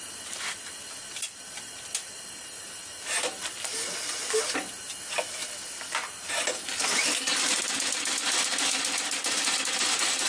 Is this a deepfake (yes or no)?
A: no